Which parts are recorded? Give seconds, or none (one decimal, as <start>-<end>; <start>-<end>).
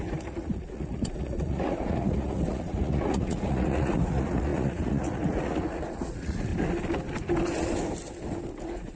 6.5-8.6